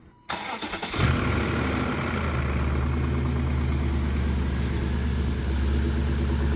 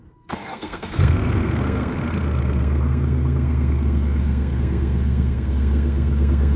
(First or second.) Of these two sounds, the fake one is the second